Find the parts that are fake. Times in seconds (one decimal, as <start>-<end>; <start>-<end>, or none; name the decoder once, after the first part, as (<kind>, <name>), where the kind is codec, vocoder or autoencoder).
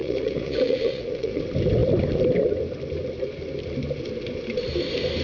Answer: 0.0-1.4 (vocoder, Vocos)